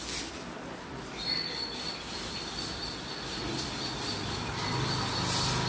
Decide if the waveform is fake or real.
real